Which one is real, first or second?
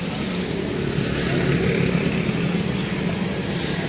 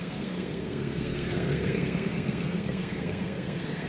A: first